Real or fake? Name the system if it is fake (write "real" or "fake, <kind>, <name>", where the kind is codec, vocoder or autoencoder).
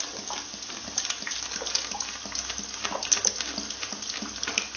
real